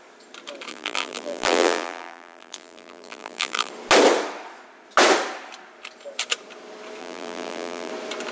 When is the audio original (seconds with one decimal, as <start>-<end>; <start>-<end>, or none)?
0.0-0.7; 3.7-7.0; 7.9-8.3